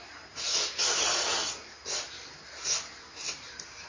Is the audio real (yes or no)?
yes